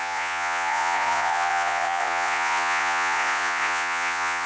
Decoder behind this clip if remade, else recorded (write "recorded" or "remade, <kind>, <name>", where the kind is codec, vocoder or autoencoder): remade, vocoder, Vocos